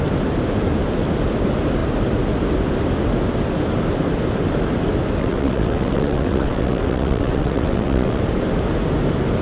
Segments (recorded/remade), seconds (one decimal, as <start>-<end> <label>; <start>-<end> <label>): 0.0-5.2 recorded; 5.2-8.2 remade; 8.2-9.4 recorded